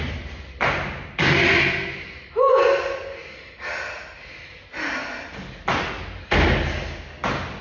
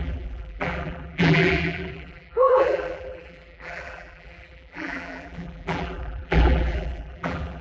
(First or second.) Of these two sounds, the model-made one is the second